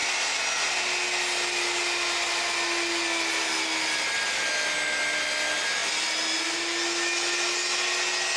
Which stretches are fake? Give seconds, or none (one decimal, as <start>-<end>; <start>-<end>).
none